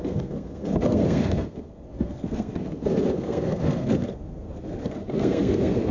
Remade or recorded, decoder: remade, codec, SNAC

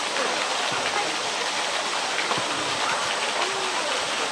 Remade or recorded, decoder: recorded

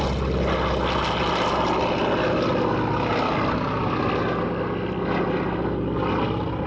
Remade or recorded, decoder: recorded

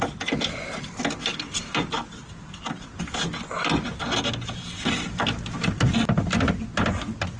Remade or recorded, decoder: recorded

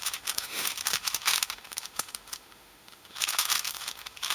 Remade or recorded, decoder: remade, autoencoder, DAC-VAE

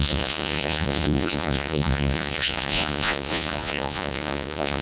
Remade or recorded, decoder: remade, vocoder, Vocos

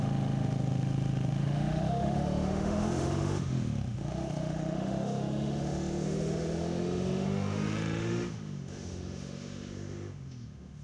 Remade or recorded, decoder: remade, autoencoder, DAC-VAE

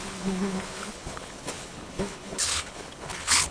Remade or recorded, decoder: remade, codec, HILCodec